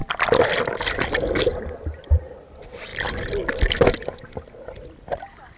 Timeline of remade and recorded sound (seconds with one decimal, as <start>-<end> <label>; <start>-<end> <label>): 0.0-1.5 recorded; 1.5-2.2 remade; 2.2-5.6 recorded